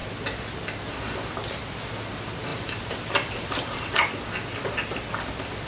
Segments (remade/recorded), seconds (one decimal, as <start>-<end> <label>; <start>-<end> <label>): 0.0-1.4 recorded; 1.4-2.1 remade; 2.1-2.5 recorded; 2.5-4.1 remade; 4.1-5.7 recorded